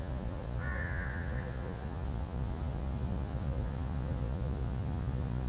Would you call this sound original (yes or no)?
no